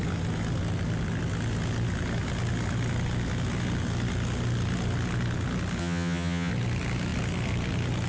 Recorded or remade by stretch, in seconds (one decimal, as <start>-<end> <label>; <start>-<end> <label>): 0.0-5.8 recorded; 5.8-6.5 remade; 6.5-8.1 recorded